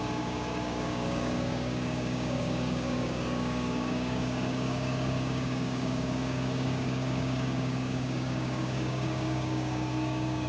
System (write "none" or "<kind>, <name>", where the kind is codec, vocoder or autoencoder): codec, DAC